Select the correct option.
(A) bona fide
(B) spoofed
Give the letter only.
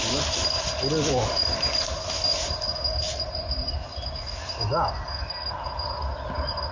A